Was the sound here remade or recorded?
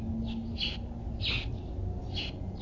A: recorded